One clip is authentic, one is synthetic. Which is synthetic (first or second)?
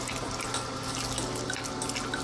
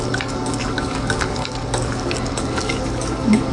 second